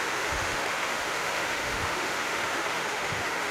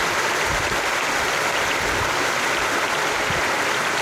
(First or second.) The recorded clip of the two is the second